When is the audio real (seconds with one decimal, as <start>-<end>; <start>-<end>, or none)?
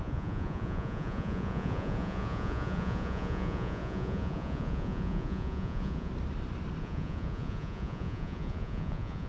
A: 6.1-6.8